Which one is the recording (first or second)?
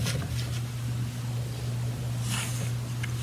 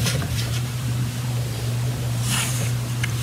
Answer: first